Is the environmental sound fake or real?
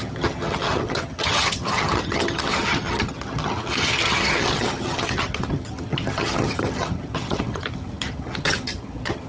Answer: fake